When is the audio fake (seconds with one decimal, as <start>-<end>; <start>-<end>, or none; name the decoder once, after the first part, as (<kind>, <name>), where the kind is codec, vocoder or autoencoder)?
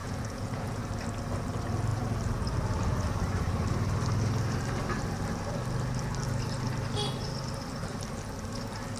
0.0-0.8 (vocoder, Vocos)